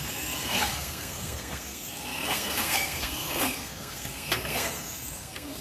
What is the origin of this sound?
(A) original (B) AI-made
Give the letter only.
B